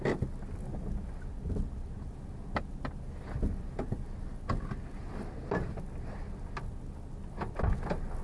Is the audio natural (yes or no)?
yes